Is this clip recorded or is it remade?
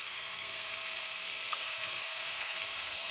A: remade